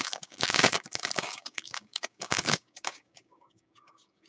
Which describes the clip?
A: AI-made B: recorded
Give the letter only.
A